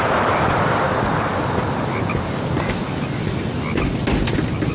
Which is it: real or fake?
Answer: real